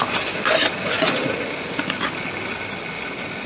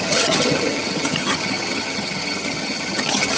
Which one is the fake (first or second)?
second